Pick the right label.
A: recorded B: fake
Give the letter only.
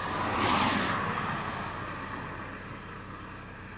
A